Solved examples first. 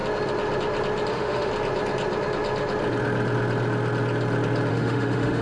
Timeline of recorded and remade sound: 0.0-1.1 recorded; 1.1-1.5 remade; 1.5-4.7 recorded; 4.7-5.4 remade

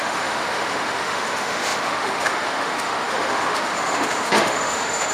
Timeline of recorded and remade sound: 0.0-5.1 remade

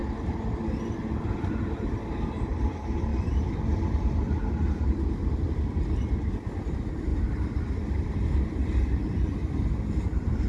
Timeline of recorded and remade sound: 0.0-3.1 recorded; 3.1-5.7 remade; 5.7-7.1 recorded; 7.1-8.1 remade; 8.1-9.4 recorded; 9.4-10.0 remade; 10.0-10.5 recorded

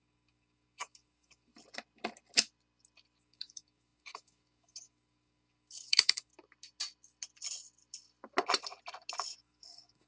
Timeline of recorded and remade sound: 0.0-1.5 remade; 1.5-3.2 recorded; 3.2-6.3 remade; 6.3-9.4 recorded; 9.4-10.1 remade

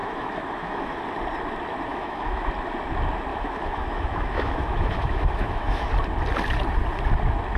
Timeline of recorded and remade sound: 0.0-1.0 remade; 1.0-1.9 recorded; 1.9-2.5 remade; 2.5-3.3 recorded; 3.3-5.9 remade; 5.9-7.6 recorded

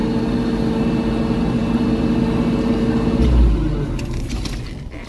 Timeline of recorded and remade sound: 0.0-5.1 recorded

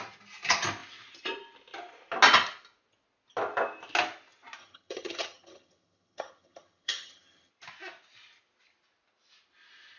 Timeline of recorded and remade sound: 0.0-4.6 recorded; 4.6-7.5 remade; 7.5-10.0 recorded